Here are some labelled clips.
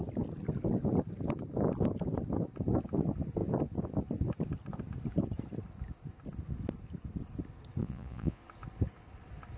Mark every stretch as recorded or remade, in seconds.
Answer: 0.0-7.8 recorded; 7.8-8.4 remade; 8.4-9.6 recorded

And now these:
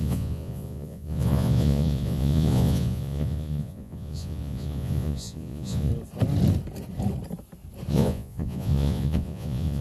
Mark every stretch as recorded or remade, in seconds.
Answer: 0.0-5.9 remade; 5.9-7.9 recorded; 7.9-9.8 remade

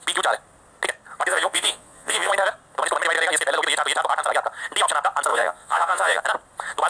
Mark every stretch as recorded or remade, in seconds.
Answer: 0.0-1.3 recorded; 1.3-2.3 remade; 2.3-5.3 recorded; 5.3-6.2 remade; 6.2-6.9 recorded

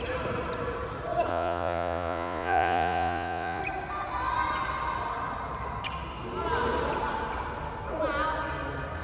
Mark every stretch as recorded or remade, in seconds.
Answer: 0.0-1.3 recorded; 1.3-3.6 remade; 3.6-9.0 recorded

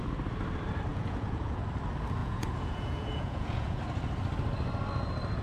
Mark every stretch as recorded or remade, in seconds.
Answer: 0.0-0.9 recorded; 0.9-1.6 remade; 1.6-2.2 recorded; 2.2-3.8 remade; 3.8-5.4 recorded

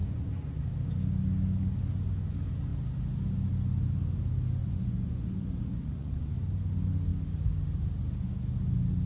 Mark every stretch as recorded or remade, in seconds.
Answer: 0.0-0.7 remade; 0.7-4.6 recorded; 4.6-6.3 remade; 6.3-9.1 recorded

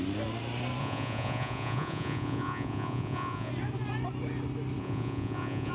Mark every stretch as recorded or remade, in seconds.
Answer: 0.0-0.8 recorded; 0.8-3.5 remade; 3.5-4.8 recorded; 4.8-5.7 remade